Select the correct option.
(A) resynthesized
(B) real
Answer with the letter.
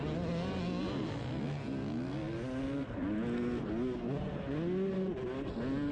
B